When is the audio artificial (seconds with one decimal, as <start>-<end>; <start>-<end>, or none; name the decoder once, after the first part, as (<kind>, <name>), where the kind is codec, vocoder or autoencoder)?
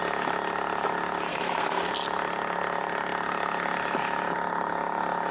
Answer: 1.3-1.9 (codec, SNAC)